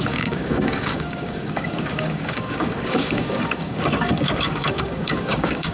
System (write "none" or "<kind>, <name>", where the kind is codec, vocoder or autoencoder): codec, DAC